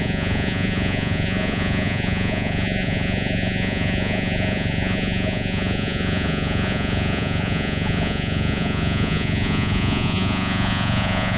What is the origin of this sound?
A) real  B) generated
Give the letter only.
B